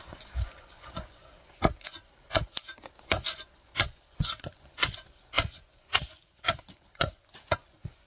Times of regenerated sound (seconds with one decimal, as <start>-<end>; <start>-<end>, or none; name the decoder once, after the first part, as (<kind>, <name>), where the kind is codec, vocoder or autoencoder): 0.0-8.1 (vocoder, Vocos)